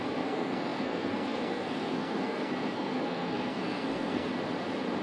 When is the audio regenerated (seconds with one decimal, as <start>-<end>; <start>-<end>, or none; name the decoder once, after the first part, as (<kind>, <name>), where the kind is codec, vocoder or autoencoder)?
0.0-4.3 (codec, SNAC)